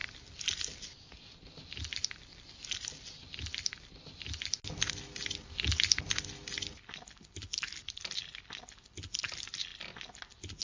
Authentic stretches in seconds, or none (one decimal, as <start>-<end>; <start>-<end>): 0.0-10.6